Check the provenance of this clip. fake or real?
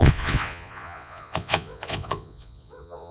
fake